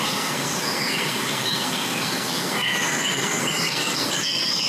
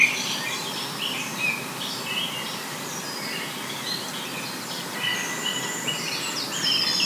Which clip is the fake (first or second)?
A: first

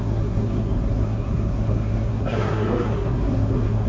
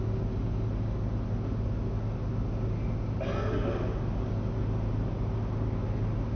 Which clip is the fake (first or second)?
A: first